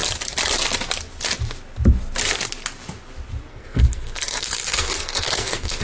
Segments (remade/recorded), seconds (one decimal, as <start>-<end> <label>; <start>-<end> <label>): 0.0-3.5 recorded; 3.5-5.8 remade